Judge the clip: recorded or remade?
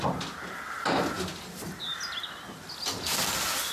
recorded